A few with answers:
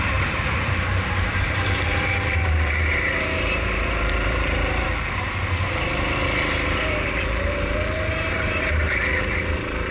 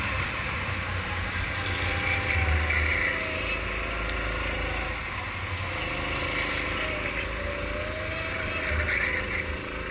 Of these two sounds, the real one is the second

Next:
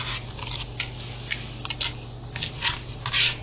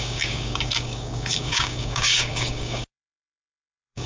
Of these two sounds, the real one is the first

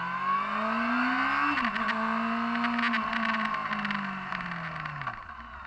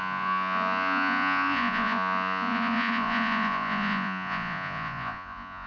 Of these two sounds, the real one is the first